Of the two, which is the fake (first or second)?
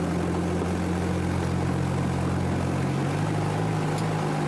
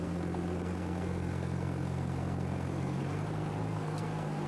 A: second